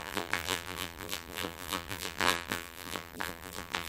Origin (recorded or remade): remade